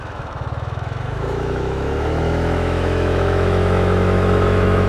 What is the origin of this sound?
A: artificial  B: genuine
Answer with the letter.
A